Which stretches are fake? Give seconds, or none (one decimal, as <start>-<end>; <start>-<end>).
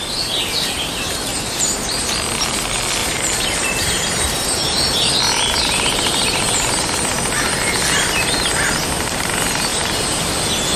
1.3-2.1; 3.0-5.1; 9.7-10.2